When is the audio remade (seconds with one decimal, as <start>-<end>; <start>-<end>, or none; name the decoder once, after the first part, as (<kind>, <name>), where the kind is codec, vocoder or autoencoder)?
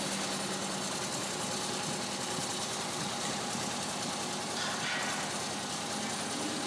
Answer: none